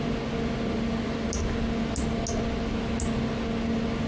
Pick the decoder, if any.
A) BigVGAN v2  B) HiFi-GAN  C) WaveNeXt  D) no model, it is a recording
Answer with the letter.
D